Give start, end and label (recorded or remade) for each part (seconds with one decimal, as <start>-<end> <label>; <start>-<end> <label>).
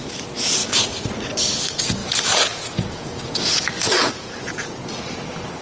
0.0-0.6 recorded; 0.6-1.1 remade; 1.1-2.0 recorded; 2.0-3.6 remade; 3.6-4.0 recorded; 4.0-4.8 remade; 4.8-5.6 recorded